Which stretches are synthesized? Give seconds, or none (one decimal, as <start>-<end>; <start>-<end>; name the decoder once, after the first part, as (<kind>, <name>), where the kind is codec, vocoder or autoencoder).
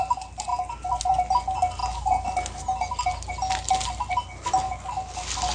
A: none